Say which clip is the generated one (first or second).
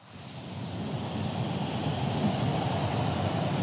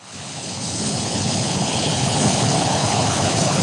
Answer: second